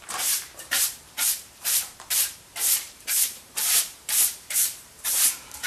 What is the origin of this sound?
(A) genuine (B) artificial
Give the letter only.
B